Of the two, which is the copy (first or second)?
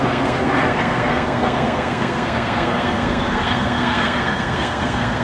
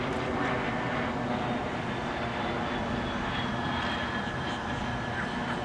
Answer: first